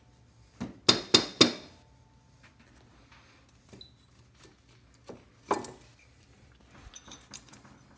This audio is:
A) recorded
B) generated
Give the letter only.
A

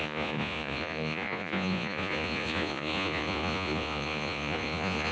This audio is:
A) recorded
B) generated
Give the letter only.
B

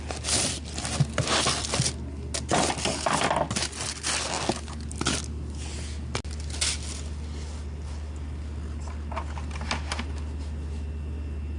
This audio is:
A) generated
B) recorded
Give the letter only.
B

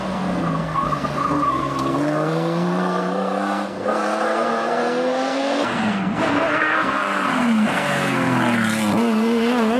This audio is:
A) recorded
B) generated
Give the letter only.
B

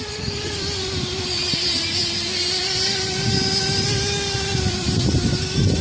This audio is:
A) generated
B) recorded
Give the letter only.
B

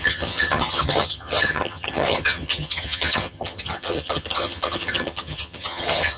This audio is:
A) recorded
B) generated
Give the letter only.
B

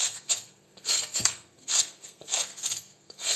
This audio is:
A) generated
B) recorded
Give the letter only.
A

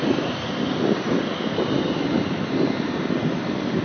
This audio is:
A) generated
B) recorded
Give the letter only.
B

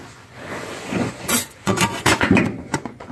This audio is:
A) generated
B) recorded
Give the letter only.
A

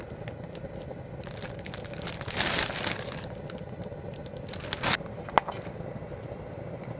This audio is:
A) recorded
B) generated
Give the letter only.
A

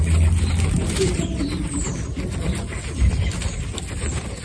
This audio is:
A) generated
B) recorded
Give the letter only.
B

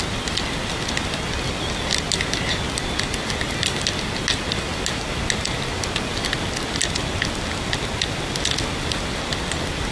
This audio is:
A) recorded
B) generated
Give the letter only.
A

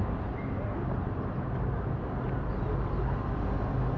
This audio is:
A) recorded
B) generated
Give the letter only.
A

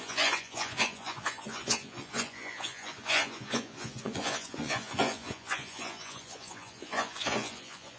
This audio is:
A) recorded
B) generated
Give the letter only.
B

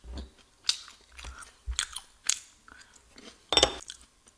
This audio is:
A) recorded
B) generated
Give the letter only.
A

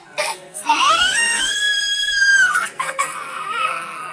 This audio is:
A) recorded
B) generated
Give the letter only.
B